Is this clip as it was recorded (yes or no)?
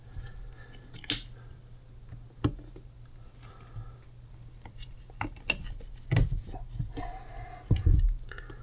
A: yes